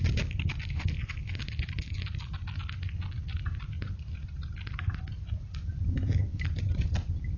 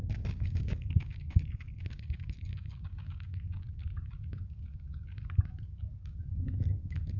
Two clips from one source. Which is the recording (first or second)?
first